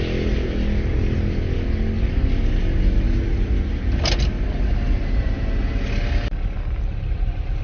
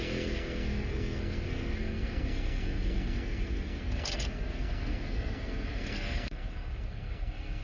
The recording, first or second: first